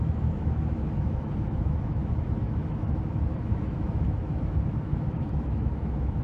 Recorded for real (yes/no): no